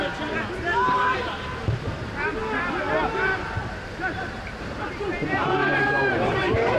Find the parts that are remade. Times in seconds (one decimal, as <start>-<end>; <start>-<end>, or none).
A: 0.0-2.4; 3.0-6.8